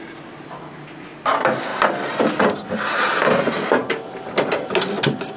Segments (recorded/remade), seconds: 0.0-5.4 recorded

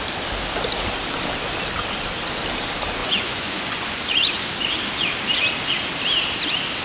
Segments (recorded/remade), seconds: 0.0-3.0 recorded; 3.0-4.0 remade; 4.0-6.8 recorded

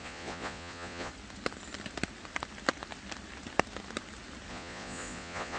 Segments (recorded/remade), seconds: 0.0-1.1 remade; 1.1-4.5 recorded; 4.5-5.6 remade

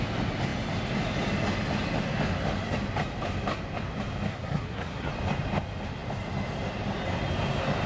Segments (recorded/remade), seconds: 0.0-4.3 recorded; 4.3-5.1 remade; 5.1-7.9 recorded

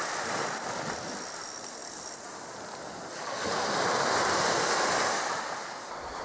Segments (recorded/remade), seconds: 0.0-6.2 recorded

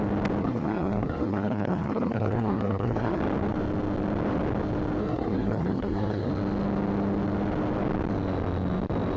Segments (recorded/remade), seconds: 0.0-0.4 recorded; 0.4-3.2 remade; 3.2-5.0 recorded; 5.0-6.3 remade; 6.3-9.2 recorded

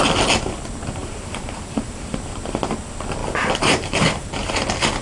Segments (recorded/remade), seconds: 0.0-1.0 recorded; 1.0-2.1 remade; 2.1-3.2 recorded; 3.2-4.6 remade; 4.6-5.0 recorded